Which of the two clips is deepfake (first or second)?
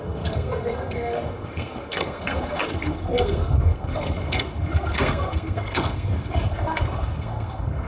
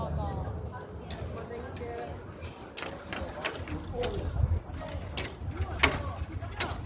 first